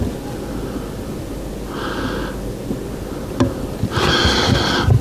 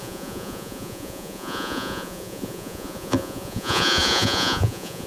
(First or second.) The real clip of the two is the first